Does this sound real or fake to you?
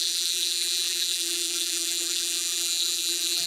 fake